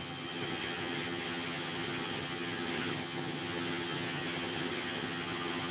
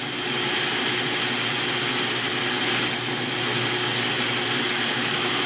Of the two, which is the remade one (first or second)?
first